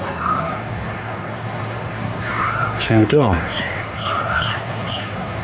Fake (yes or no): yes